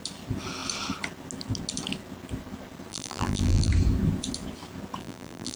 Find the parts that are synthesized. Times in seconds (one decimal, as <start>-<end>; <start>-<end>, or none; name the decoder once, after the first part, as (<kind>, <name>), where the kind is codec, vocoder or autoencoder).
2.9-3.7 (vocoder, BigVGAN v2); 5.0-5.6

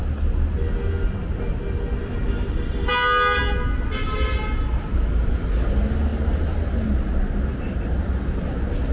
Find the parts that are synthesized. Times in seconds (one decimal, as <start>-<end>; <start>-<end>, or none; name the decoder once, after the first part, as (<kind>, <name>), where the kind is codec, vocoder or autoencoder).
none

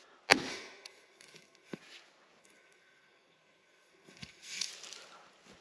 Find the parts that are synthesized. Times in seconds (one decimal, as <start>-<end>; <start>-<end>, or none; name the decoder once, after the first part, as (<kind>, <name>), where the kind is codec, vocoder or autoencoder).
0.5-1.8 (codec, SNAC); 2.4-4.7

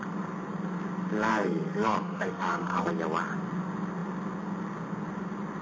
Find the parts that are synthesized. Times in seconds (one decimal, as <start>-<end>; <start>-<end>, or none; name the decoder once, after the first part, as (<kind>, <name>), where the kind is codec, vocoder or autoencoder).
1.3-2.9 (codec, SNAC)

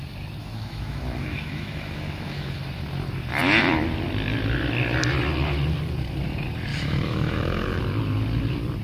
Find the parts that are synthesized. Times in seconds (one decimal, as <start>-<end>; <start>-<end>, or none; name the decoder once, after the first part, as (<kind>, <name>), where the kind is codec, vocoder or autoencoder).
0.4-2.6 (autoencoder, DAC-VAE); 6.7-7.8

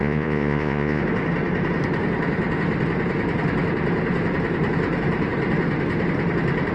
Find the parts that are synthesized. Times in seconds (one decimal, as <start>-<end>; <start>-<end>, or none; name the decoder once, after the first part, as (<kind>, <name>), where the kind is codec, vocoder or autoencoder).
0.0-1.0 (vocoder, Vocos)